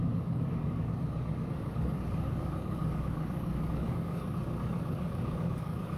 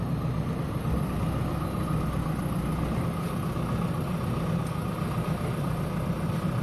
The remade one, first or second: first